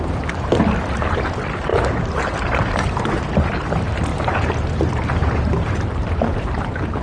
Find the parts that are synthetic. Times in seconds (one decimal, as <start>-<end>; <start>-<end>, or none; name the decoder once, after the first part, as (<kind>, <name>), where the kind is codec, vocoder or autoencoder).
4.1-6.6 (vocoder, BigVGAN v2)